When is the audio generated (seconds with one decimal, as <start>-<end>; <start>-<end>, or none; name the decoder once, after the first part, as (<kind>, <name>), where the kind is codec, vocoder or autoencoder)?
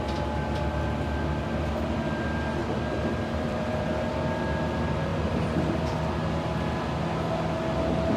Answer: 2.6-3.9 (vocoder, BigVGAN v2); 5.1-5.8